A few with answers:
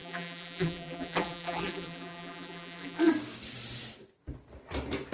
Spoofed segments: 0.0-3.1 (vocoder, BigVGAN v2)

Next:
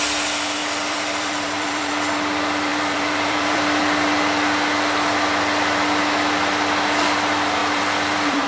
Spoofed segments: 0.6-1.9 (vocoder, BigVGAN v2); 2.7-3.8; 7.6-8.5

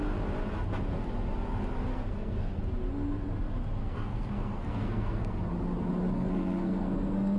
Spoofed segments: 1.9-2.6 (codec, SNAC); 3.8-5.5; 6.1-7.4

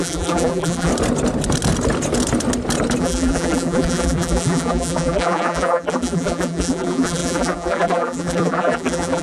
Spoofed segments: 0.0-0.9 (vocoder, BigVGAN v2); 3.0-9.2

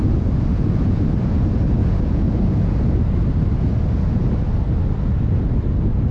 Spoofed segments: 0.5-1.1 (vocoder, Vocos); 1.8-2.9